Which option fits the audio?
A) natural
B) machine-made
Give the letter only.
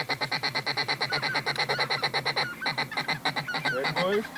A